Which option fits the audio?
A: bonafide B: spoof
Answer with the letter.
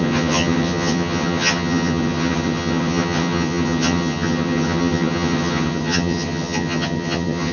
B